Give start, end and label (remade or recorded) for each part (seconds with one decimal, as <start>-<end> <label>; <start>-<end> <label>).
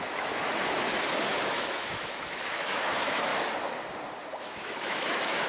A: 0.0-0.5 remade; 0.5-1.3 recorded; 1.3-3.3 remade; 3.3-4.4 recorded; 4.4-5.5 remade